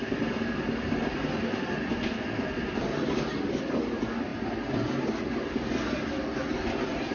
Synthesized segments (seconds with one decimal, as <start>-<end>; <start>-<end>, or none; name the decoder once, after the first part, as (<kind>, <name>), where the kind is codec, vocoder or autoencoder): none